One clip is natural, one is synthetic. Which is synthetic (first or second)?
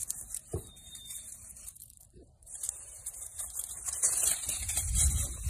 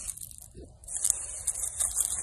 first